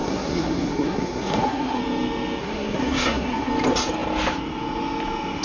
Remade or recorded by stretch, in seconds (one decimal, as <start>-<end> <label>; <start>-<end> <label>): 0.0-1.8 remade; 1.8-2.4 recorded; 2.4-3.5 remade; 3.5-5.4 recorded